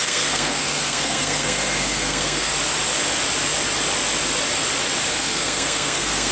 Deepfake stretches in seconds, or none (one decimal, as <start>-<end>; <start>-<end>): 0.0-2.5; 5.1-6.3

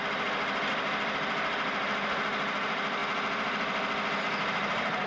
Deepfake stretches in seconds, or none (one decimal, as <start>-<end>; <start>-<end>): none